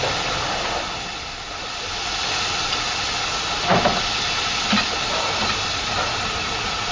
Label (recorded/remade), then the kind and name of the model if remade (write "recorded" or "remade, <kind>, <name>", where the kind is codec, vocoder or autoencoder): recorded